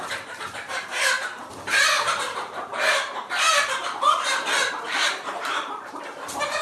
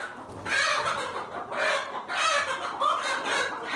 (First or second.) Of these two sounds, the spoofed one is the first